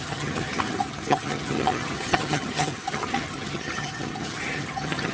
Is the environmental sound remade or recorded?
remade